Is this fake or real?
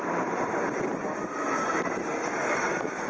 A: real